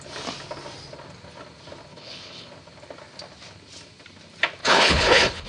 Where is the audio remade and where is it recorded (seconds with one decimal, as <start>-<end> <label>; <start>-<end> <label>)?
0.0-1.9 recorded; 1.9-2.5 remade; 2.5-4.6 recorded; 4.6-5.5 remade